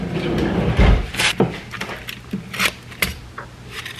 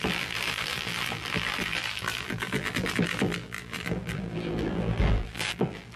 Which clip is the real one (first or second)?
first